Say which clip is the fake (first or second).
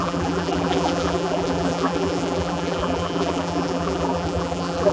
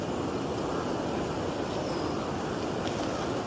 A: first